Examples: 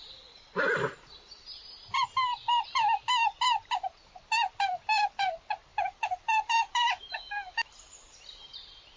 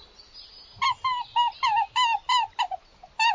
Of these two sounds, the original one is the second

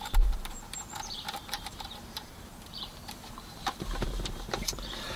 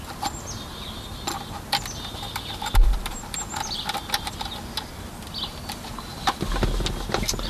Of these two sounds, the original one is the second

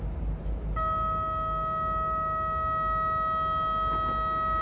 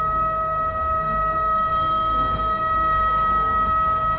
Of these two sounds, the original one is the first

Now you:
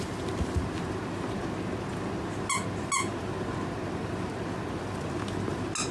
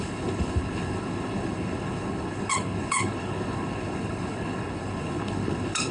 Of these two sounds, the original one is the first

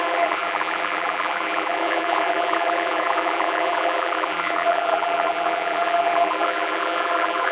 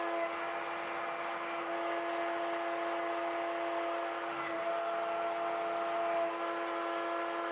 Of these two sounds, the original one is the second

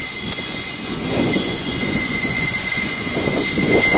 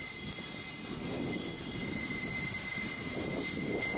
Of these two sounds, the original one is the second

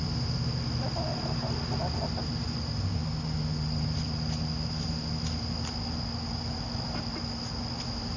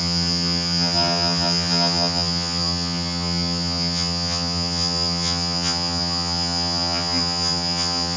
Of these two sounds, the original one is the first